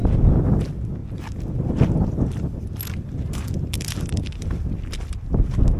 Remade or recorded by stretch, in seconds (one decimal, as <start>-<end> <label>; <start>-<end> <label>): 0.0-5.8 recorded